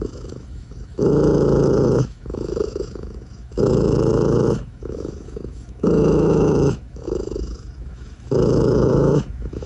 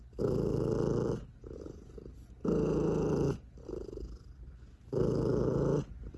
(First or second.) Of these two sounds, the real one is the second